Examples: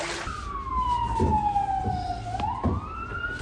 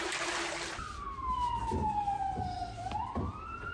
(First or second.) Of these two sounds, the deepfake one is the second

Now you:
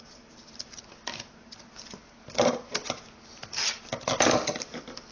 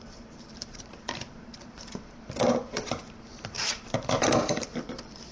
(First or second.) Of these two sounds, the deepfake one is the second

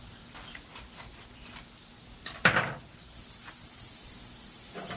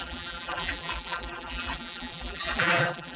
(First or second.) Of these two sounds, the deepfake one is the second